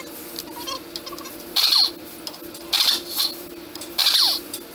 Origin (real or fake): real